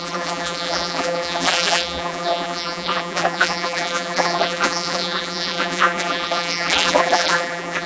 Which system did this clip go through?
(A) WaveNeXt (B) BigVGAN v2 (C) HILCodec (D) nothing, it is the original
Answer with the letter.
B